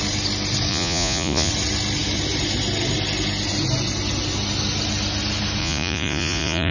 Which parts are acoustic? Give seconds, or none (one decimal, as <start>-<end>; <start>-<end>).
0.0-0.7; 1.5-5.6